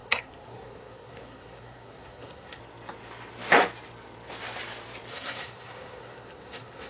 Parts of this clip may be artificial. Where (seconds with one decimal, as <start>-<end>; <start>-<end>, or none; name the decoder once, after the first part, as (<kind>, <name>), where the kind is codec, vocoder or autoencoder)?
0.0-2.6 (codec, SNAC); 5.1-6.9